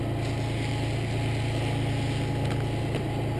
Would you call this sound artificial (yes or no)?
no